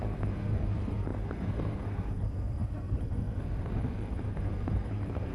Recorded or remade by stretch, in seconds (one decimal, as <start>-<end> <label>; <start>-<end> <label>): 0.0-5.3 remade